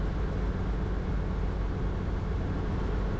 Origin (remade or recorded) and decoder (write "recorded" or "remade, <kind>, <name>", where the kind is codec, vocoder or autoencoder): recorded